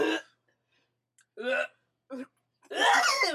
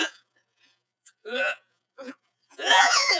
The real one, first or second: first